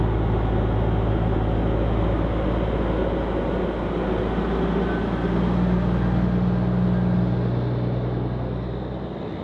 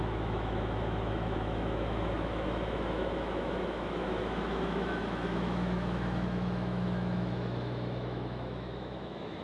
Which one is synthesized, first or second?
second